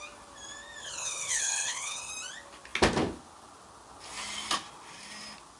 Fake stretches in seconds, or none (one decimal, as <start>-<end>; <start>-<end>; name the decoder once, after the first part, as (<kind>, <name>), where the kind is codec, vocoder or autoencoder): 0.8-2.1 (codec, HILCodec)